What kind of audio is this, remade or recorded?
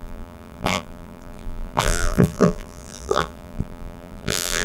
remade